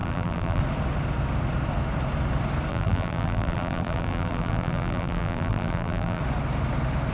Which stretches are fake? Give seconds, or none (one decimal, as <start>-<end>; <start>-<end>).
0.0-0.6; 2.7-6.2